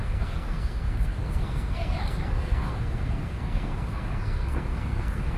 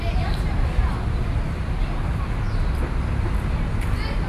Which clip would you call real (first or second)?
second